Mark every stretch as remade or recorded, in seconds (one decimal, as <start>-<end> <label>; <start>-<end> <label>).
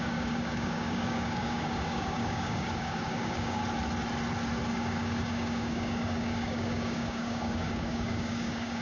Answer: 0.0-3.6 remade; 3.6-4.7 recorded; 4.7-8.8 remade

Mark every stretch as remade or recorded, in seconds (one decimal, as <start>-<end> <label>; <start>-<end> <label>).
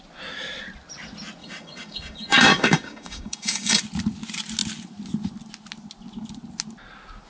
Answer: 0.0-1.4 recorded; 1.4-3.8 remade; 3.8-7.3 recorded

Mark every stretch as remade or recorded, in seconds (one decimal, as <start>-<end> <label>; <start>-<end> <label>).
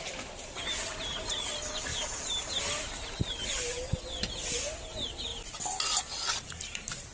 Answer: 0.0-7.1 recorded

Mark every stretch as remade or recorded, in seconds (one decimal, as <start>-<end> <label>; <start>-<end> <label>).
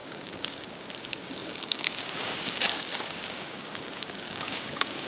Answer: 0.0-5.1 remade